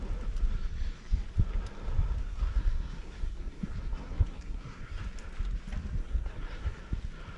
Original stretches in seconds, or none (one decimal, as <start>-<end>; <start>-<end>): 0.0-2.2; 5.0-6.0; 6.8-7.4

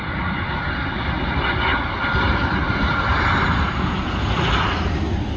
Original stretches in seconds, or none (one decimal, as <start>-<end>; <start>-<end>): 0.0-5.4

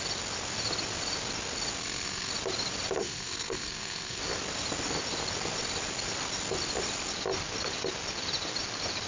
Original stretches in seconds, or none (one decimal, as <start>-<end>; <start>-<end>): 0.0-1.8; 2.3-3.0; 4.2-9.1

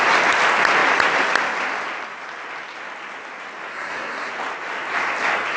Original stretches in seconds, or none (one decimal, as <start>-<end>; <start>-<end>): 0.0-3.7; 4.3-5.6